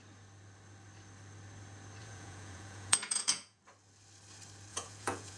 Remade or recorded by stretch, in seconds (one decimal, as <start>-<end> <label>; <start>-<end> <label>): 0.0-2.0 recorded; 2.0-3.6 remade; 3.6-4.7 recorded; 4.7-5.4 remade